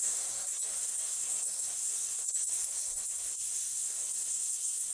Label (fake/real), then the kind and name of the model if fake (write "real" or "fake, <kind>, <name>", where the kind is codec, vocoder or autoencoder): fake, codec, SNAC